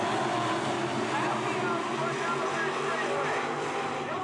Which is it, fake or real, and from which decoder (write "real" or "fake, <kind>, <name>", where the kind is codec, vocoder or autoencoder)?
real